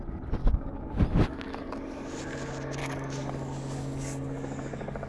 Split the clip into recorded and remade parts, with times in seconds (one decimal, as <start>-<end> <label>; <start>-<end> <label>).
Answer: 0.0-0.4 recorded; 0.4-1.0 remade; 1.0-2.8 recorded; 2.8-5.1 remade